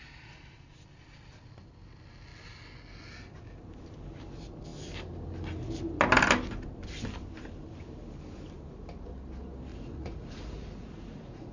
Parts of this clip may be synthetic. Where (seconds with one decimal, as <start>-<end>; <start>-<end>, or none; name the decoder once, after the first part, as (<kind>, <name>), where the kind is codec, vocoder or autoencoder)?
9.7-11.5 (vocoder, Vocos)

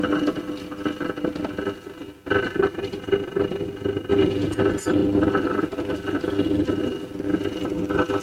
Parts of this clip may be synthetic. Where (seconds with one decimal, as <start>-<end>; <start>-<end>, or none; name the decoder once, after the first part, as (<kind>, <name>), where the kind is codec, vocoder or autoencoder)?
4.1-4.6 (vocoder, Vocos)